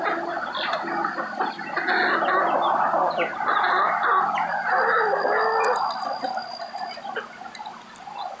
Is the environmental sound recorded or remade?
recorded